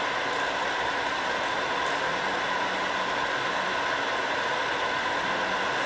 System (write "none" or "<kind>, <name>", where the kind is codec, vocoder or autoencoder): none